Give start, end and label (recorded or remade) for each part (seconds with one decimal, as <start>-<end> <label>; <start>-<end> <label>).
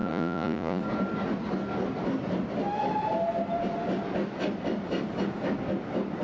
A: 0.0-0.8 remade; 0.8-6.2 recorded